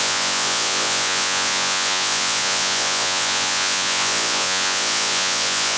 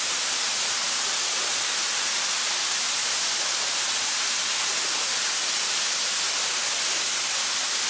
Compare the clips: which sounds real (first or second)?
second